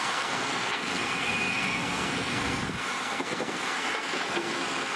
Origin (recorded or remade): remade